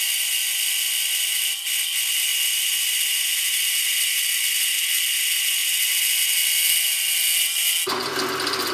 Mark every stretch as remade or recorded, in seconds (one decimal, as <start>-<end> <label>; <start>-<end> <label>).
0.0-8.7 recorded